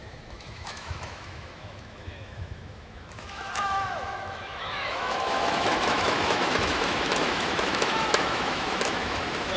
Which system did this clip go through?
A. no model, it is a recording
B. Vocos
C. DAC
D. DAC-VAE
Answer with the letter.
D